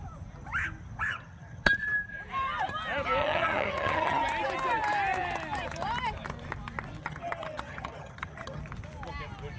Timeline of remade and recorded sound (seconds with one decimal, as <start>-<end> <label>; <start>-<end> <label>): 0.0-1.1 recorded; 1.1-1.7 remade; 1.7-3.2 recorded; 3.2-4.2 remade; 4.2-7.0 recorded; 7.0-8.6 remade; 8.6-9.6 recorded